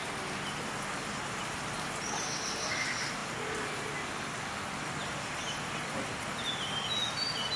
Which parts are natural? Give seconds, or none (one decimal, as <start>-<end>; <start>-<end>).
0.0-7.6